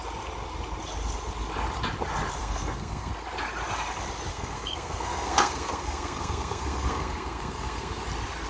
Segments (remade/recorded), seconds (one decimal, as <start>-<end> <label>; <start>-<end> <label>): 0.0-2.4 recorded; 2.4-3.1 remade; 3.1-4.3 recorded; 4.3-8.0 remade; 8.0-8.5 recorded